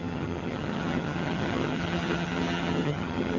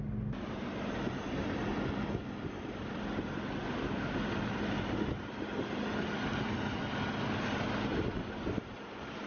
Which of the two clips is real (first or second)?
second